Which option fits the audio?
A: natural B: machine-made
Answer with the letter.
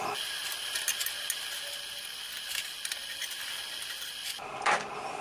A